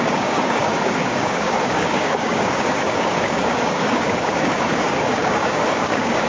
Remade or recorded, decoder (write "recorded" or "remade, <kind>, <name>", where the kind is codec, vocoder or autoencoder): remade, codec, DAC